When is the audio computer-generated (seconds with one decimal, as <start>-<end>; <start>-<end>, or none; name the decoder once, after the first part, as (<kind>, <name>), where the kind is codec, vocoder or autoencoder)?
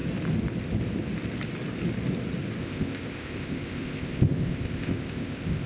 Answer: 2.6-5.7 (codec, ZipCodec)